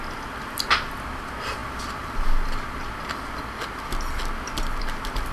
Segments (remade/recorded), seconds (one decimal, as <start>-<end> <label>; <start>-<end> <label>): 0.0-5.3 recorded